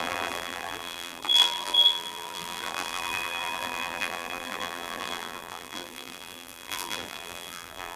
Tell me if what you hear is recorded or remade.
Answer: remade